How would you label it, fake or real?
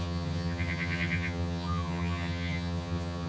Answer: fake